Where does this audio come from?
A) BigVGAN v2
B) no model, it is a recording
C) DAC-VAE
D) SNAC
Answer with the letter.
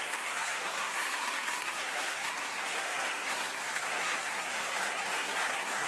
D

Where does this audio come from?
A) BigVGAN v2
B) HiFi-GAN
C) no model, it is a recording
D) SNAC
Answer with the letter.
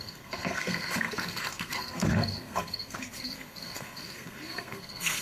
D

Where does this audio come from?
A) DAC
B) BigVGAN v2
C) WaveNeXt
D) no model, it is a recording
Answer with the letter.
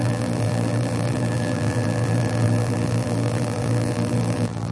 B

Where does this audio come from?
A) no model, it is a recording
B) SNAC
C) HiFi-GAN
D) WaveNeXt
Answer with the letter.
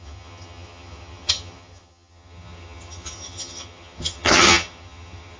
C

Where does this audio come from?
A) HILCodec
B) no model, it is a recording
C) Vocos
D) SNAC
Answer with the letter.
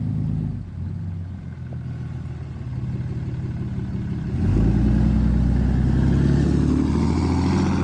B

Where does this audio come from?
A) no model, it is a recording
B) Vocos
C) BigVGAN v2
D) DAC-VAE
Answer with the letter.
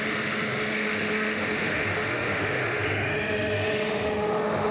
D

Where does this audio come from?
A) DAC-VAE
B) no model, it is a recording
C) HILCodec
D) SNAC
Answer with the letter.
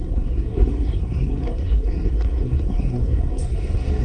D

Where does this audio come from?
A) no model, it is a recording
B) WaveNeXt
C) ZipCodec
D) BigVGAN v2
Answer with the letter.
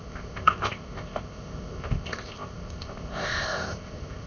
C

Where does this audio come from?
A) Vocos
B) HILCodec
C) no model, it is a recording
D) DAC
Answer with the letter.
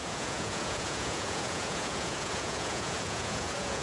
A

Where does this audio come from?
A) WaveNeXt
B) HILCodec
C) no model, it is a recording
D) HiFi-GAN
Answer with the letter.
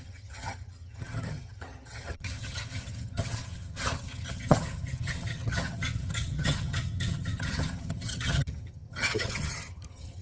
D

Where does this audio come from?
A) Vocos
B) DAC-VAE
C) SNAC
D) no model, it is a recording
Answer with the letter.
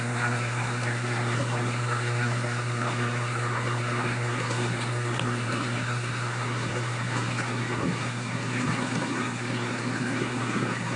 C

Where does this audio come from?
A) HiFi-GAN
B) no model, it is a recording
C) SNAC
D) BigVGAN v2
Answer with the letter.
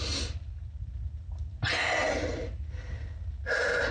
B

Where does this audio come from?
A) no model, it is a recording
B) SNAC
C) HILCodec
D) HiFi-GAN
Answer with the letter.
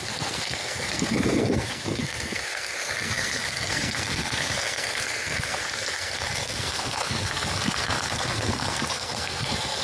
B